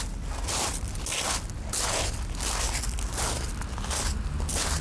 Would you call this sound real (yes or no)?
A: yes